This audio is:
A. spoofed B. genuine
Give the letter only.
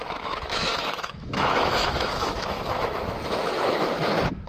A